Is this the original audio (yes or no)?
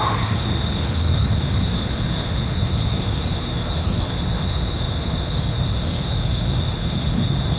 no